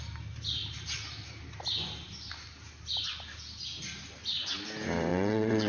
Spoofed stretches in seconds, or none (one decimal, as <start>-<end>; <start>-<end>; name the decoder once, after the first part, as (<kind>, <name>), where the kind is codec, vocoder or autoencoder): 5.1-5.7 (vocoder, WaveNeXt)